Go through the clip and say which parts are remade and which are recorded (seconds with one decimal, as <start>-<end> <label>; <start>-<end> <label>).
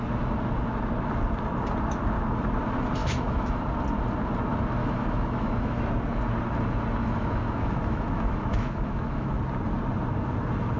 0.0-3.0 recorded; 3.0-3.6 remade; 3.6-4.8 recorded; 4.8-5.8 remade; 5.8-7.0 recorded; 7.0-9.3 remade; 9.3-10.8 recorded